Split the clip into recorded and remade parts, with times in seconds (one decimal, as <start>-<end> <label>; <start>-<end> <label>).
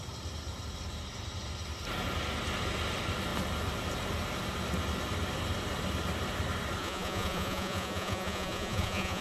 0.0-6.8 recorded; 6.8-9.2 remade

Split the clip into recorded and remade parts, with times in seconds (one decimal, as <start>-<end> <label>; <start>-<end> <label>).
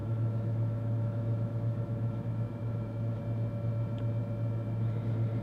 0.0-3.2 remade; 3.2-5.4 recorded